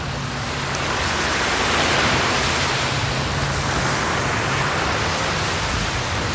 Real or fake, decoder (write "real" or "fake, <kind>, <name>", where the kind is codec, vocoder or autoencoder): real